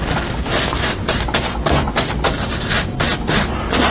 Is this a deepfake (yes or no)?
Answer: no